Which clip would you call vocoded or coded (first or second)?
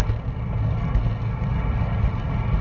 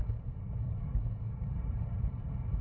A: second